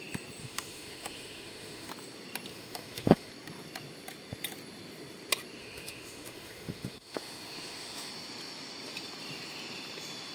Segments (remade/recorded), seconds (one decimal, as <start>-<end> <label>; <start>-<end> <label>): 0.0-0.4 recorded; 0.4-1.9 remade; 1.9-2.5 recorded; 2.5-3.3 remade; 3.3-5.6 recorded; 5.6-8.1 remade; 8.1-10.3 recorded